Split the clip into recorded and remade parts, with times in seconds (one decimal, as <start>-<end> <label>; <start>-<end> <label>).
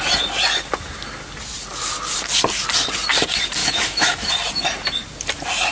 0.0-3.6 recorded; 3.6-4.3 remade; 4.3-5.7 recorded